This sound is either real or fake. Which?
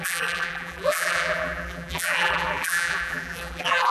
fake